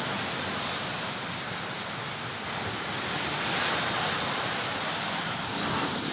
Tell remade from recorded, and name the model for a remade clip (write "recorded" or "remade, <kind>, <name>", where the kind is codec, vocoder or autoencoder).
recorded